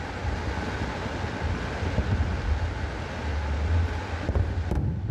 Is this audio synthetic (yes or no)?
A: no